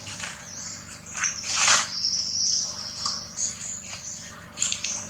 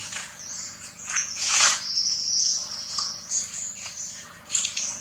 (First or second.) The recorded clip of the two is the first